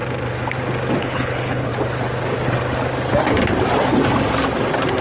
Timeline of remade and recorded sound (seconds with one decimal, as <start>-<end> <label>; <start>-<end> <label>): 0.0-1.0 recorded; 1.0-1.7 remade; 1.7-5.0 recorded